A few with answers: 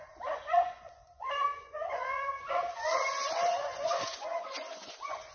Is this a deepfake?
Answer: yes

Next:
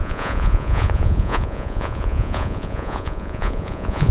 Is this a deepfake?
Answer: yes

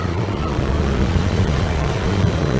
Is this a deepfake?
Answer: yes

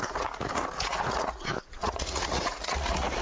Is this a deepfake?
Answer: yes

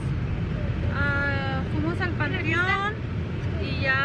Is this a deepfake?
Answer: no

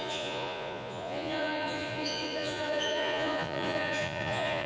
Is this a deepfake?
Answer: yes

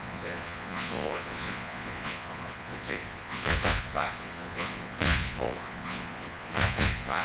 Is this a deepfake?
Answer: yes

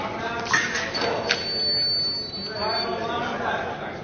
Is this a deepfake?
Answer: no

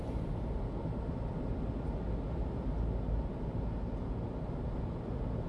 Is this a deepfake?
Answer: no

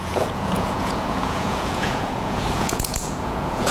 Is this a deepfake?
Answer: yes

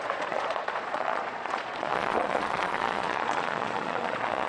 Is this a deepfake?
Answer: yes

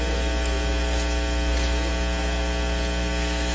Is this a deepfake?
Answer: no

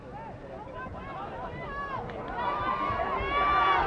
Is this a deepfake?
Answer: no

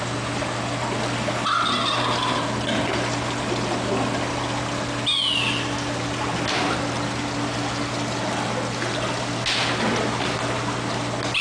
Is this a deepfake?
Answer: no